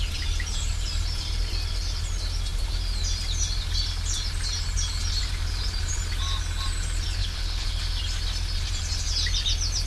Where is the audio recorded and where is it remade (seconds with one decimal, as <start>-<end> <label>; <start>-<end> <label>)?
0.0-7.2 recorded; 7.2-7.8 remade; 7.8-9.9 recorded